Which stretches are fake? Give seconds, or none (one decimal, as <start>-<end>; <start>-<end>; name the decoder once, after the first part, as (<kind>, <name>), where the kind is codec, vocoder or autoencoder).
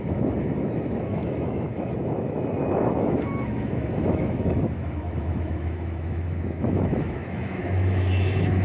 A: 0.0-8.6 (autoencoder, DAC-VAE)